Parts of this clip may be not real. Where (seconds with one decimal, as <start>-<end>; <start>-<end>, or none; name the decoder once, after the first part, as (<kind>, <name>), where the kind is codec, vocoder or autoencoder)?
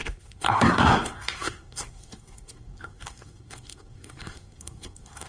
0.0-5.3 (codec, SNAC)